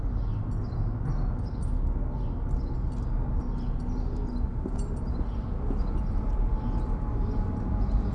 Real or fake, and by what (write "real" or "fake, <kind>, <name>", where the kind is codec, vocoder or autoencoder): real